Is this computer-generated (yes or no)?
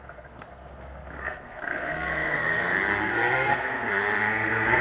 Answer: yes